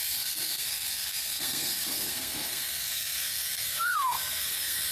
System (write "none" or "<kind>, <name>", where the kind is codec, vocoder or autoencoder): codec, SNAC